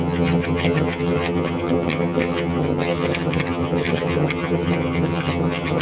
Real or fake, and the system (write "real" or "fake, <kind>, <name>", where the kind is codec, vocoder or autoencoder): fake, vocoder, HiFi-GAN